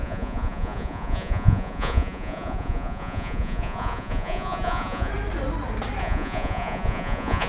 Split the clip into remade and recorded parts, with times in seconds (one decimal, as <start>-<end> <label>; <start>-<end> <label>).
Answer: 0.0-5.1 remade; 5.1-6.0 recorded; 6.0-7.5 remade